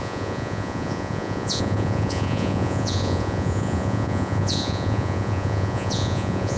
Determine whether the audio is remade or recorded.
remade